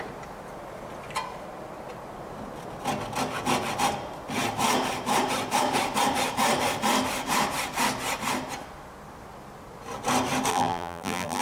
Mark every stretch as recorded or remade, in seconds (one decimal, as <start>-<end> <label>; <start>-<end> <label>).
0.0-10.5 recorded; 10.5-11.4 remade